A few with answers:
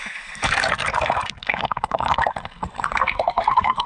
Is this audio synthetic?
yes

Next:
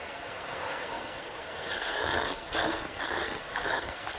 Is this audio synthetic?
yes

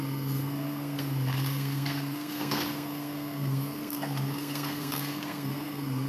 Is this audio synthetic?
yes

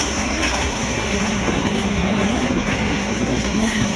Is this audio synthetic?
yes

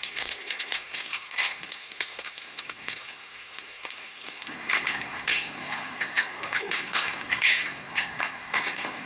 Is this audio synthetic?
yes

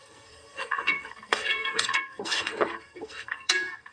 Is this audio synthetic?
yes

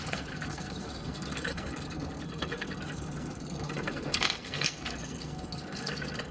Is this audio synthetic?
yes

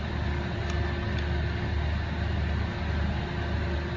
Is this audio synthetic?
no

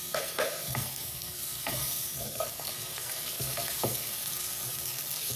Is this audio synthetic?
yes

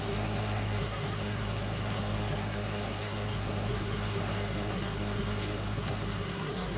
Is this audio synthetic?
yes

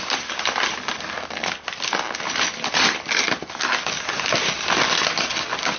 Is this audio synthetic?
no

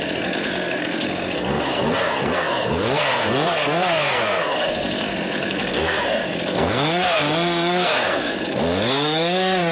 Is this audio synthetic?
yes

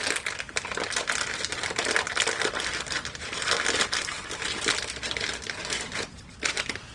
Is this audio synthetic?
no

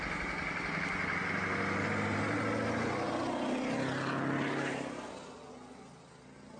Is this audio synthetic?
no